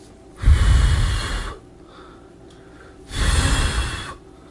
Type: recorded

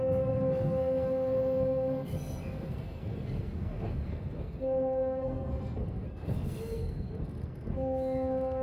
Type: remade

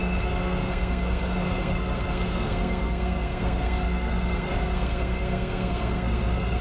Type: remade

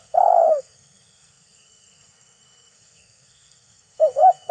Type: remade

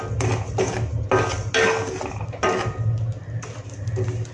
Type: recorded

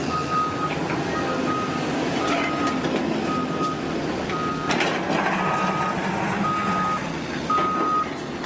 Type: recorded